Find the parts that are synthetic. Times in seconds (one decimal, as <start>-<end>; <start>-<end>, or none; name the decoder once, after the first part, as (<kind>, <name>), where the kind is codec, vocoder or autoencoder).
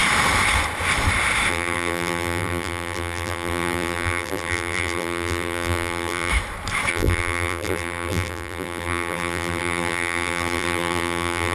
1.5-6.3 (vocoder, BigVGAN v2); 6.9-11.5